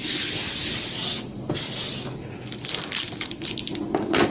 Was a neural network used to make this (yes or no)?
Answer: yes